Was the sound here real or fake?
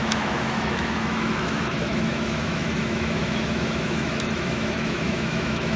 fake